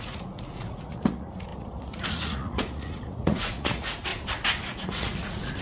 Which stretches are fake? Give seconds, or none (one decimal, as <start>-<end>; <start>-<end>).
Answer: 0.0-4.1; 4.7-5.6